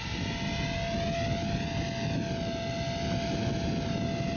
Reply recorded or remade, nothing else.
recorded